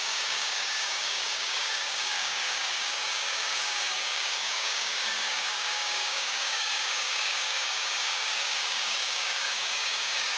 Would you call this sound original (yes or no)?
no